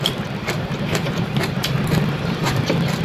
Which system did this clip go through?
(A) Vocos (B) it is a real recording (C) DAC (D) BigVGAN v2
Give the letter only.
D